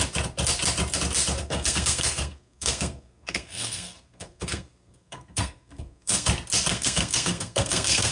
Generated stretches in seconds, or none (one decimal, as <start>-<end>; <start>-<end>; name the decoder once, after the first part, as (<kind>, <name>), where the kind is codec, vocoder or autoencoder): 1.4-6.3 (codec, SNAC); 6.7-8.1